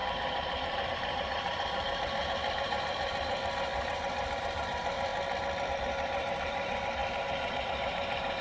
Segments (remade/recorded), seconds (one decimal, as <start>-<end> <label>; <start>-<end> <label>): 0.0-5.1 remade; 5.1-5.7 recorded; 5.7-8.4 remade